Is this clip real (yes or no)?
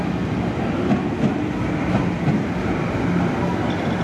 yes